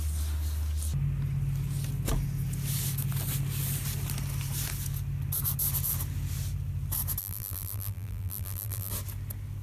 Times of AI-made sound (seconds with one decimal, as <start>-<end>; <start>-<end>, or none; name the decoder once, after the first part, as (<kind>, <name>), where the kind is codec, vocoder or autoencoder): 7.2-8.9 (vocoder, BigVGAN v2)